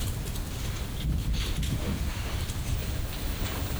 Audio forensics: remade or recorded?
remade